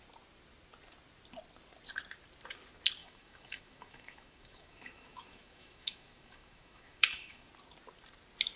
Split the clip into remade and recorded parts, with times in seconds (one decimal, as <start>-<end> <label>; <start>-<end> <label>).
0.0-3.0 recorded; 3.0-7.5 remade; 7.5-8.6 recorded